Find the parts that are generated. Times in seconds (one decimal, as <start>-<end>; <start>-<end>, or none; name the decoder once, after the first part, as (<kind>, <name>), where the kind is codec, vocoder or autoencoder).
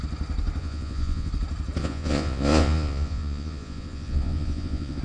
0.6-1.3 (vocoder, Vocos); 1.8-5.0